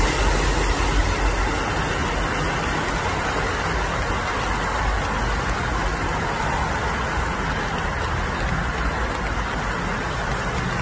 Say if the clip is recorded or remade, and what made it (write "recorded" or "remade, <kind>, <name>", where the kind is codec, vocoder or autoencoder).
recorded